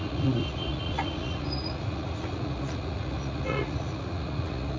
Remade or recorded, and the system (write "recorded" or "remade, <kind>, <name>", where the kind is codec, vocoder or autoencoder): remade, vocoder, Vocos